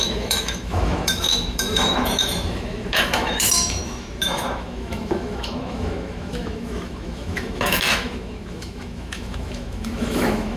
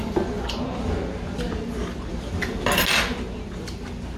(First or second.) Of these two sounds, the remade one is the first